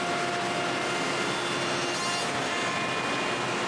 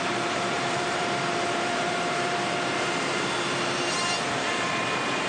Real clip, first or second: first